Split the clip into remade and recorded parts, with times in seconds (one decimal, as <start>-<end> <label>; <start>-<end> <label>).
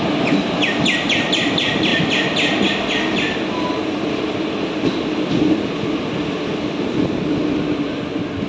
0.0-8.5 recorded